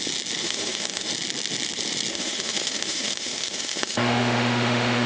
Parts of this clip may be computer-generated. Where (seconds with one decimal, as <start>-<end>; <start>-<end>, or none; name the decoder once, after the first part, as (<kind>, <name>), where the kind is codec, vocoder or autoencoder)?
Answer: 0.4-1.1 (autoencoder, DAC-VAE); 2.1-5.1